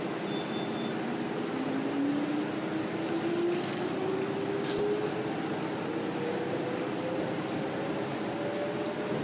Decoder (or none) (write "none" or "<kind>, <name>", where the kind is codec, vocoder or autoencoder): none